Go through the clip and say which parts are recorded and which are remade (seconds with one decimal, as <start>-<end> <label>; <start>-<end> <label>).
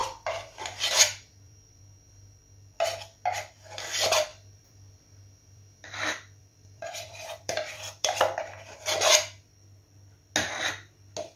0.0-2.4 remade; 2.4-4.3 recorded; 4.3-6.0 remade; 6.0-6.4 recorded; 6.4-8.4 remade; 8.4-11.4 recorded